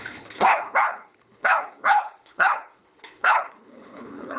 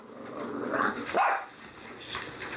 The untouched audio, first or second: second